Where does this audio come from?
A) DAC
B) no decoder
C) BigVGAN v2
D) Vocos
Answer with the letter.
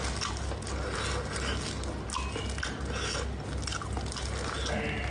B